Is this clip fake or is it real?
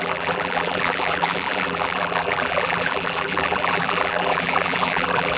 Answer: fake